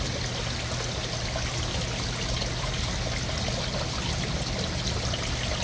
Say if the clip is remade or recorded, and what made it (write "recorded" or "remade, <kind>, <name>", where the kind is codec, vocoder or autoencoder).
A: recorded